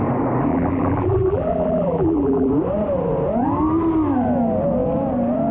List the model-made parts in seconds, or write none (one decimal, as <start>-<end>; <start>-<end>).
0.5-2.5